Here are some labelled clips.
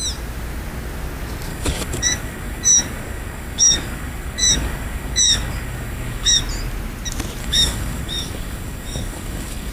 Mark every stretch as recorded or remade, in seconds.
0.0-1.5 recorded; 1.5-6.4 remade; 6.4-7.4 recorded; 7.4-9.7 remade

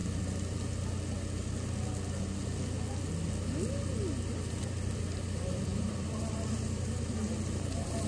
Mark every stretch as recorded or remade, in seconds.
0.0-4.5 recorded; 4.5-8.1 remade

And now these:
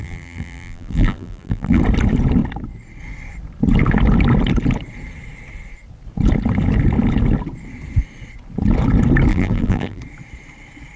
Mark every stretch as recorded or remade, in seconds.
0.0-1.8 remade; 1.8-9.3 recorded; 9.3-10.0 remade; 10.0-11.0 recorded